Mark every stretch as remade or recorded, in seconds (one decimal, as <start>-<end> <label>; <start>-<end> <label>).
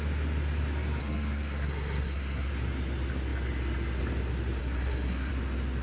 0.0-1.0 recorded; 1.0-2.5 remade; 2.5-4.6 recorded; 4.6-5.3 remade; 5.3-5.8 recorded